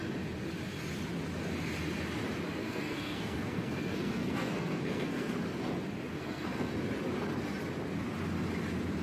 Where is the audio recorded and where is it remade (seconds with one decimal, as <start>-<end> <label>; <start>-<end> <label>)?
0.0-2.6 recorded; 2.6-5.3 remade; 5.3-6.1 recorded; 6.1-6.7 remade; 6.7-9.0 recorded